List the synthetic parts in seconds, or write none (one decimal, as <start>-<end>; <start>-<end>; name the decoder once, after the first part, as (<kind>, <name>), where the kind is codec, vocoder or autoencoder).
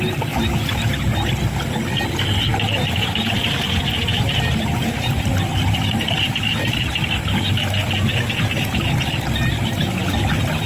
2.5-5.3 (vocoder, BigVGAN v2)